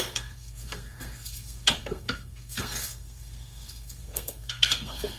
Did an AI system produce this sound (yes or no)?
yes